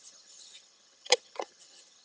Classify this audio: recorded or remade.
remade